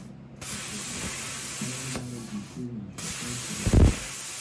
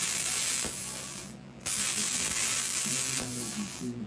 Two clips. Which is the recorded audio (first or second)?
first